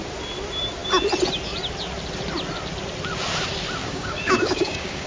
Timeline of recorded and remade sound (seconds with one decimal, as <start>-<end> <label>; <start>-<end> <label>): 0.0-3.8 recorded; 3.8-5.1 remade